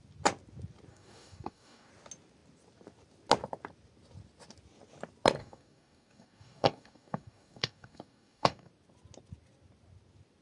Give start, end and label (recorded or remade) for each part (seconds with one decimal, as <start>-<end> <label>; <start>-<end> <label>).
0.0-0.9 recorded; 0.9-1.9 remade; 1.9-5.4 recorded; 5.4-8.7 remade; 8.7-10.4 recorded